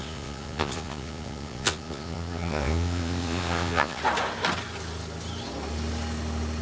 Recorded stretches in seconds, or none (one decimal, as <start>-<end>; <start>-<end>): 4.0-6.6